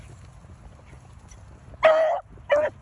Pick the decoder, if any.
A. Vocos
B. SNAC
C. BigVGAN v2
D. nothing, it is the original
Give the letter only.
D